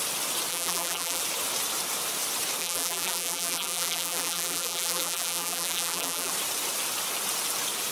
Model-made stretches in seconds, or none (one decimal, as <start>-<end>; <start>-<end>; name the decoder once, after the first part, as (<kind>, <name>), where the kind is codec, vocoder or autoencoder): 0.5-1.2 (vocoder, BigVGAN v2); 2.6-6.3